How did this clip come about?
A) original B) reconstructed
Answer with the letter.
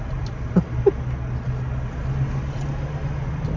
A